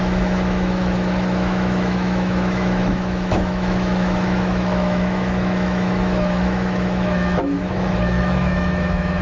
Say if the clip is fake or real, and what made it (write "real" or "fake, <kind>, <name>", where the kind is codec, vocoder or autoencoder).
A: fake, autoencoder, DAC-VAE